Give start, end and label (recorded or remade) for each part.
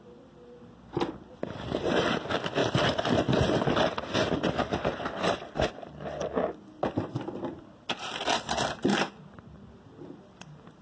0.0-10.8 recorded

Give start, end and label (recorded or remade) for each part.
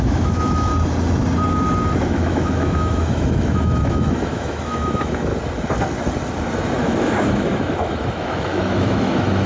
0.0-0.7 remade; 0.7-2.0 recorded; 2.0-5.3 remade; 5.3-6.8 recorded; 6.8-9.5 remade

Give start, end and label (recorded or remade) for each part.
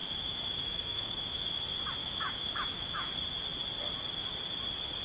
0.0-1.5 remade; 1.5-2.0 recorded; 2.0-3.1 remade; 3.1-5.0 recorded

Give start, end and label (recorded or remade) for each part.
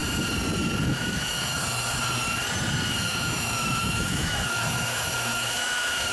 0.0-0.9 recorded; 0.9-1.5 remade; 1.5-2.9 recorded; 2.9-6.1 remade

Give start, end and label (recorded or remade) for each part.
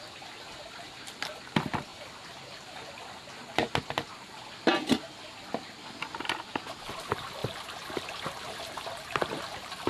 0.0-9.9 recorded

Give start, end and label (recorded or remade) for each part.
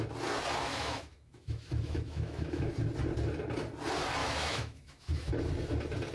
0.0-0.7 recorded; 0.7-2.7 remade; 2.7-4.2 recorded; 4.2-5.3 remade; 5.3-6.1 recorded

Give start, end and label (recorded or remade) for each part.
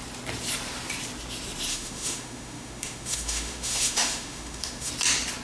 0.0-1.7 recorded; 1.7-4.9 remade; 4.9-5.4 recorded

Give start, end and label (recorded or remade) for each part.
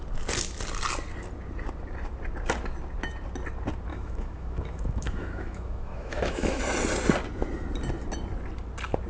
0.0-3.9 recorded; 3.9-6.6 remade; 6.6-9.1 recorded